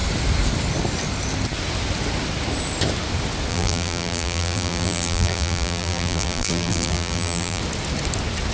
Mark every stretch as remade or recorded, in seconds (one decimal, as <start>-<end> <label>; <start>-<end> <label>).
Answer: 0.0-3.5 recorded; 3.5-7.6 remade; 7.6-8.5 recorded